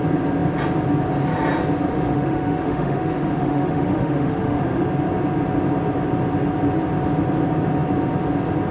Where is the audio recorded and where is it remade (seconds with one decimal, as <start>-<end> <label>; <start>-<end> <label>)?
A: 0.0-1.9 recorded; 1.9-4.8 remade; 4.8-8.7 recorded